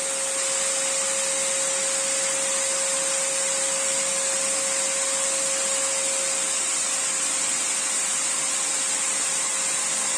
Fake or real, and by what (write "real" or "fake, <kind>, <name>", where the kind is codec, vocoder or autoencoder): real